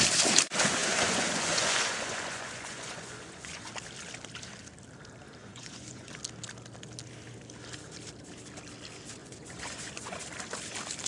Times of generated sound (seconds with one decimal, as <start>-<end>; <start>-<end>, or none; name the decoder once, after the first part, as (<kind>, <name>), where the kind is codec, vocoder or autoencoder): 0.8-3.7 (vocoder, Vocos); 5.4-6.1; 9.2-10.2